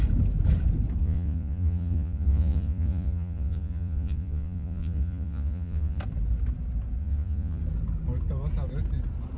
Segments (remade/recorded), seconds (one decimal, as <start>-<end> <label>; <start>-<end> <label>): 0.0-1.0 recorded; 1.0-6.0 remade; 6.0-7.0 recorded; 7.0-7.6 remade; 7.6-9.4 recorded